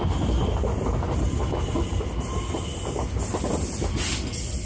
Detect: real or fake real